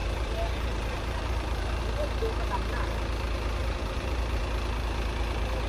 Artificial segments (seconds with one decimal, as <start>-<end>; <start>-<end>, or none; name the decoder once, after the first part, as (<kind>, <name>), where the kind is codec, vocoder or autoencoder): 0.0-1.8 (vocoder, BigVGAN v2); 3.6-4.4